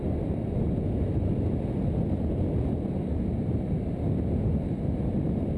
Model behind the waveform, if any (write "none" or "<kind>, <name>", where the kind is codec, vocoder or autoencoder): none